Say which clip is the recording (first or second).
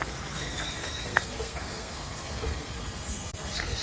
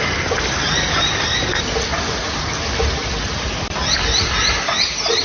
second